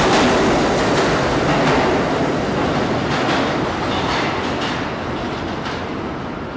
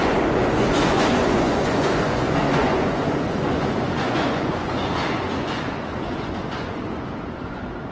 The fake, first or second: second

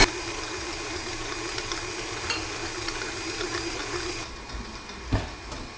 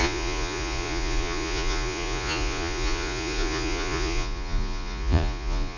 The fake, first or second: second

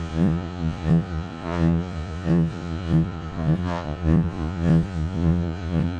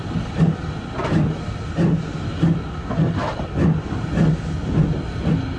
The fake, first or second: first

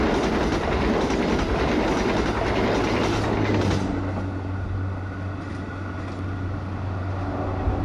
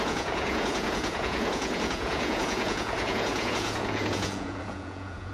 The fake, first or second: second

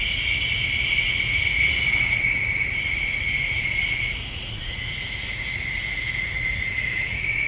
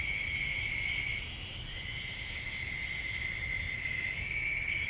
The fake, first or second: first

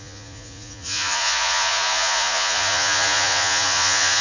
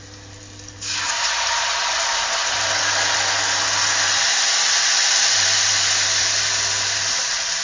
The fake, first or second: first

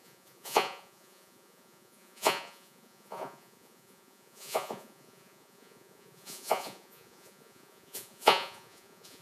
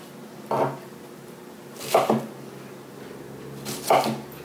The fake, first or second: first